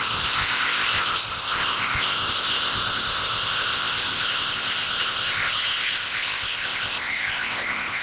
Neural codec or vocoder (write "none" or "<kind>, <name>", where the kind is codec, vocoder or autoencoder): codec, ZipCodec